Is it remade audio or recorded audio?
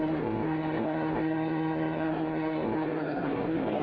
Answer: remade